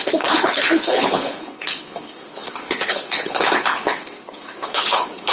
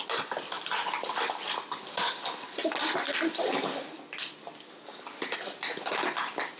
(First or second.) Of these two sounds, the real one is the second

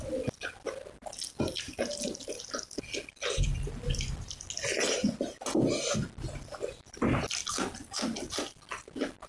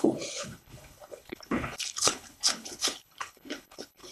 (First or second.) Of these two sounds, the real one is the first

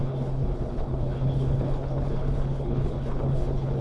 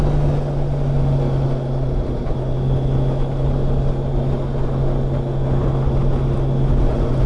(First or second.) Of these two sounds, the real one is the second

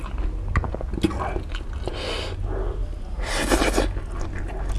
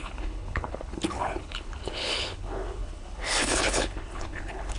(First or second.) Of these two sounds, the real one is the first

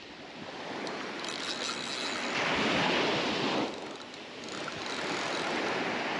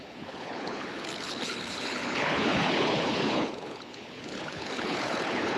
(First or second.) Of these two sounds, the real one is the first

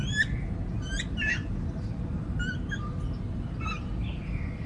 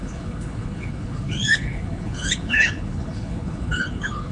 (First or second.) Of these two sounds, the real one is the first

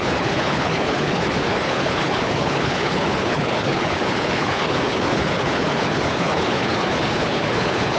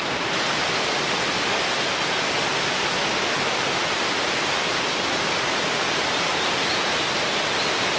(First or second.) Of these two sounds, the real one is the second